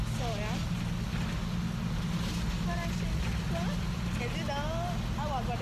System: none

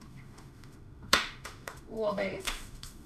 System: autoencoder, DAC-VAE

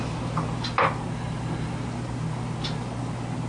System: none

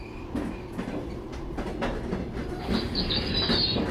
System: none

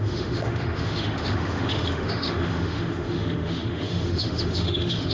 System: autoencoder, DAC-VAE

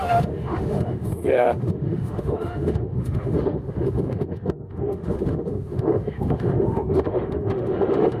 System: autoencoder, DAC-VAE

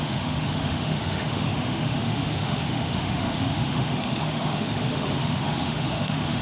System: autoencoder, DAC-VAE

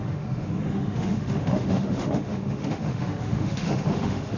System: autoencoder, DAC-VAE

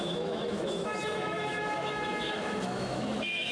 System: autoencoder, DAC-VAE